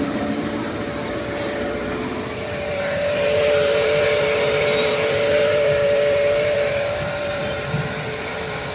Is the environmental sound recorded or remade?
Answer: remade